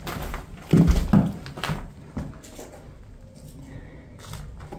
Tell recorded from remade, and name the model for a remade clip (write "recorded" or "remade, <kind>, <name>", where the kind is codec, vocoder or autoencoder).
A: recorded